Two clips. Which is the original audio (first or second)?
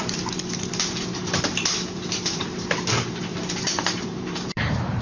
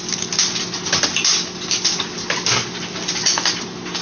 second